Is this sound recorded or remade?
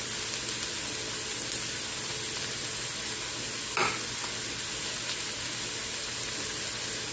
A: recorded